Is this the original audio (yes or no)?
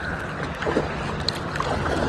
yes